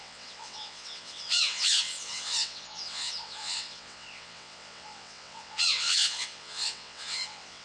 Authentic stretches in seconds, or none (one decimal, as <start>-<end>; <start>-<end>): none